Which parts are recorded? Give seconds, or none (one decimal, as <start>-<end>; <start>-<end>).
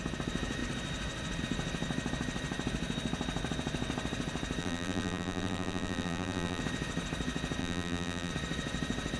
0.0-4.6; 6.6-7.6; 8.3-9.2